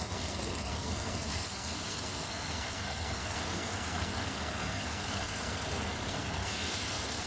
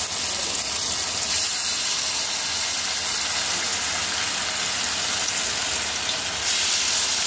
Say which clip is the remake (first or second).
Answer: first